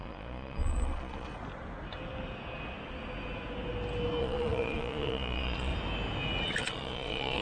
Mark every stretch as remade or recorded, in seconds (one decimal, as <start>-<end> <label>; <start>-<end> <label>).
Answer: 0.0-1.3 remade; 1.3-4.2 recorded; 4.2-5.7 remade; 5.7-6.6 recorded; 6.6-7.4 remade